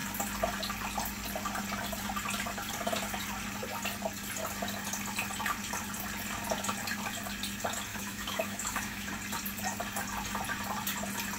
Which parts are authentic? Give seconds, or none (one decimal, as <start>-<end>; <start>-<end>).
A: 0.0-7.9; 9.1-11.4